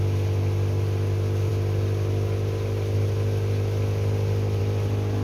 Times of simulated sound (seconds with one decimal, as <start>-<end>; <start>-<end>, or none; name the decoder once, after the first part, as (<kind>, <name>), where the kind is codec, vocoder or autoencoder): none